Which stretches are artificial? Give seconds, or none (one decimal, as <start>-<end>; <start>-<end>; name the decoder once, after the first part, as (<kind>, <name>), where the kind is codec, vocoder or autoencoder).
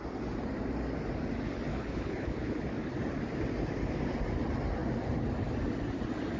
1.7-2.7 (codec, HILCodec)